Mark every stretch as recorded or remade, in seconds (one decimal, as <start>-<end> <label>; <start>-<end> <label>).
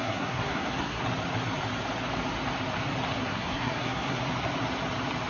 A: 0.0-1.0 remade; 1.0-3.1 recorded; 3.1-4.2 remade; 4.2-5.3 recorded